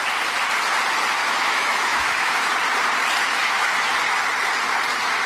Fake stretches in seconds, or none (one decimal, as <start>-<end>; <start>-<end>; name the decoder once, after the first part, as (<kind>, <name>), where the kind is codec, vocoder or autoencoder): 1.2-2.5 (autoencoder, DAC-VAE); 3.2-3.9